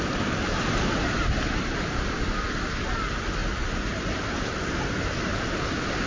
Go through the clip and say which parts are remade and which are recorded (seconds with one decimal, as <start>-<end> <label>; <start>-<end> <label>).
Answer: 0.0-3.4 recorded; 3.4-4.6 remade; 4.6-6.1 recorded

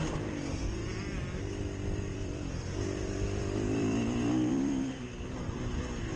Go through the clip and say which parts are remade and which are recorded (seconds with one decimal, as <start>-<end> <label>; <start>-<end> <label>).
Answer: 0.0-2.1 recorded; 2.1-5.8 remade; 5.8-6.2 recorded

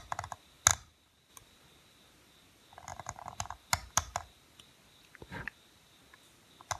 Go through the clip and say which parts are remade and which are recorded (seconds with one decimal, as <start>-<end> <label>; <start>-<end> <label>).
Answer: 0.0-0.7 recorded; 0.7-1.3 remade; 1.3-2.9 recorded; 2.9-5.0 remade; 5.0-6.8 recorded

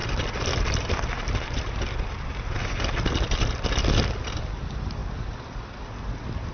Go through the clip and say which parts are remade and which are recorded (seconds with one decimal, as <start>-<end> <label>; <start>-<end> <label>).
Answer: 0.0-3.9 remade; 3.9-6.5 recorded

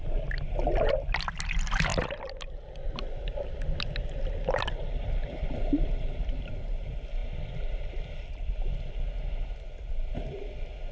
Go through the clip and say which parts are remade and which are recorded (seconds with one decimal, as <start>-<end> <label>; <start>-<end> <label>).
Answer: 0.0-4.8 recorded; 4.8-6.5 remade; 6.5-10.9 recorded

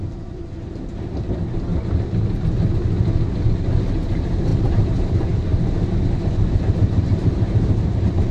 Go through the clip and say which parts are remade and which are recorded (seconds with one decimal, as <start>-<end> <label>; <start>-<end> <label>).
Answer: 0.0-1.7 remade; 1.7-3.5 recorded; 3.5-5.5 remade; 5.5-6.5 recorded; 6.5-8.3 remade

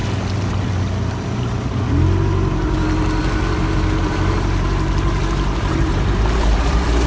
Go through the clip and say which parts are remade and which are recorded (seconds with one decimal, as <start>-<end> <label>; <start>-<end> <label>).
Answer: 0.0-3.7 recorded; 3.7-7.1 remade